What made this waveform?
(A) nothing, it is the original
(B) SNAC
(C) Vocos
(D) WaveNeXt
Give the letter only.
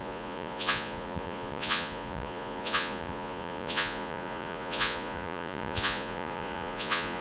C